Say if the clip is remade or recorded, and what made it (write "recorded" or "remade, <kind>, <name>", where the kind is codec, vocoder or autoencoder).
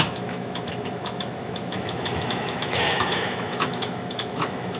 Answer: remade, autoencoder, DAC-VAE